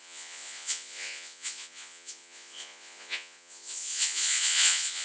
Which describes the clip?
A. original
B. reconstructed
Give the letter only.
B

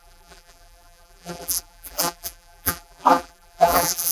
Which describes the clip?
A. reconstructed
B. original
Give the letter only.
A